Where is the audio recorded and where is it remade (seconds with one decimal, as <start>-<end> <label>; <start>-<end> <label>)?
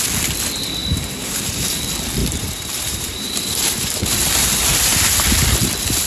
0.0-0.8 recorded; 0.8-1.8 remade; 1.8-2.2 recorded; 2.2-3.9 remade; 3.9-6.1 recorded